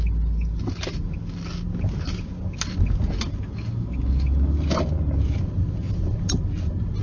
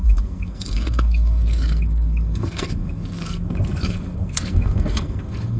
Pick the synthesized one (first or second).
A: second